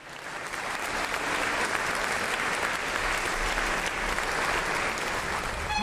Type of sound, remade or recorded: recorded